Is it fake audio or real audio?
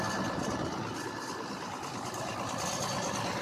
real